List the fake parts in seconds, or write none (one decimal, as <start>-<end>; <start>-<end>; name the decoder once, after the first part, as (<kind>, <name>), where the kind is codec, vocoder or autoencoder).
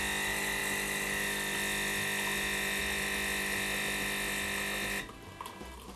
none